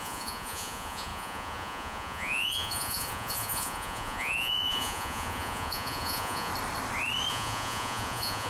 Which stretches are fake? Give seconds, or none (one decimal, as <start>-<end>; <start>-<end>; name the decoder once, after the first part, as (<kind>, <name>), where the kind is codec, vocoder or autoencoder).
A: 0.0-6.5 (vocoder, Vocos); 7.3-8.5